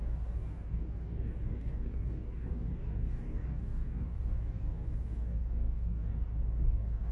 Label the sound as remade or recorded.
remade